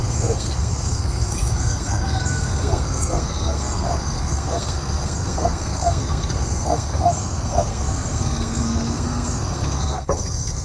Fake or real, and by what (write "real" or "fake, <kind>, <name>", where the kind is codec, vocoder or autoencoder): fake, codec, SNAC